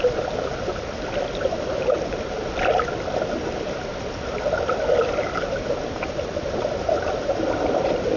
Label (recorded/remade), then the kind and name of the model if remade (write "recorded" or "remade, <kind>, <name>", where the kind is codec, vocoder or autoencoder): recorded